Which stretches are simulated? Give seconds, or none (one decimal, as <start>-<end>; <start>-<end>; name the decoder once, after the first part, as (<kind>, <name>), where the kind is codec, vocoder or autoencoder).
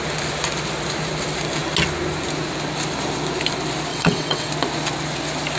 3.9-4.5 (vocoder, WaveNeXt)